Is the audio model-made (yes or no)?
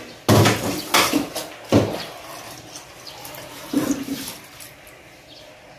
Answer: no